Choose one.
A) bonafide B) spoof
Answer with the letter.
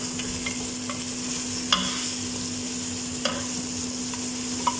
A